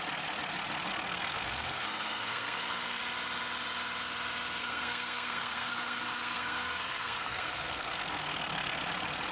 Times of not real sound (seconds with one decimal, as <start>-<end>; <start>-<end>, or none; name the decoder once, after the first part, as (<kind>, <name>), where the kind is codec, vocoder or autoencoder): 0.9-3.0 (codec, SNAC); 4.6-8.8